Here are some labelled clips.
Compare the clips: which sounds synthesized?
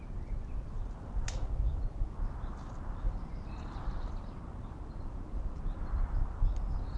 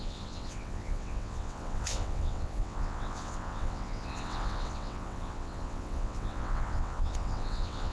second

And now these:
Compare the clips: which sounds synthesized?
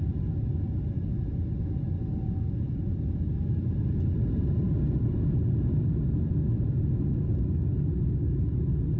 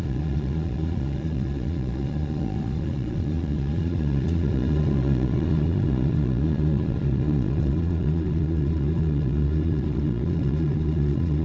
second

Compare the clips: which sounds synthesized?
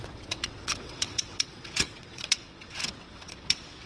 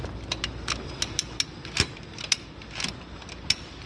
first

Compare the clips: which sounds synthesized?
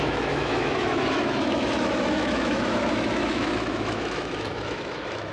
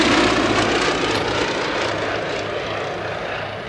first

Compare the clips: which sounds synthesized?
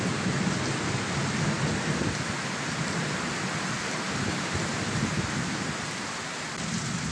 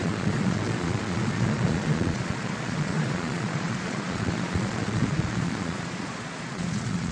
second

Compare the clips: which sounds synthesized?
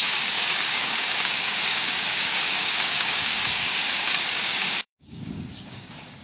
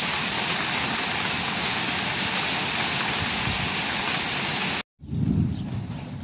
first